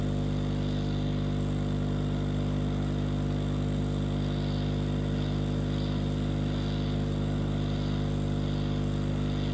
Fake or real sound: real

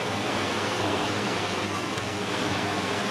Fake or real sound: fake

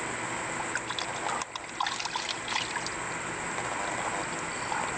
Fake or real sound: real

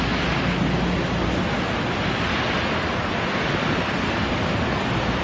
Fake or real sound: real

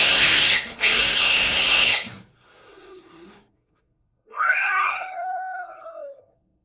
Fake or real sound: fake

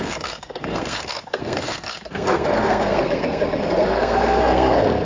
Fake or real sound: fake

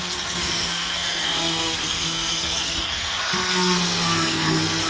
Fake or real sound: fake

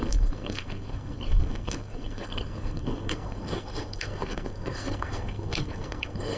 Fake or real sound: fake